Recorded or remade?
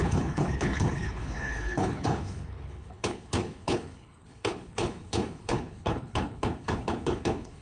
remade